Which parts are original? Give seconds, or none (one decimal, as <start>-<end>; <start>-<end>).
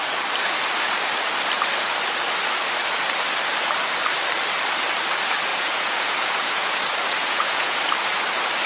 0.0-5.5; 6.8-7.2; 7.8-8.7